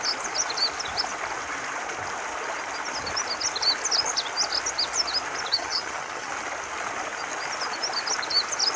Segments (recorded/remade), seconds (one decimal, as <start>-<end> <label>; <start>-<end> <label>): 0.0-5.5 recorded; 5.5-6.3 remade; 6.3-8.8 recorded